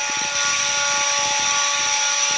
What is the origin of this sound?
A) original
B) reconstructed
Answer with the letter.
A